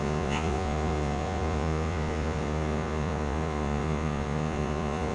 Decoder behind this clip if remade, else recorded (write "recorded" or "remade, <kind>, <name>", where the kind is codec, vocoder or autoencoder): remade, vocoder, Vocos